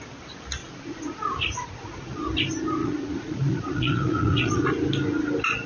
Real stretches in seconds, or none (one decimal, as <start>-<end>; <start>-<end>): 0.0-0.6; 2.1-2.8; 4.7-5.7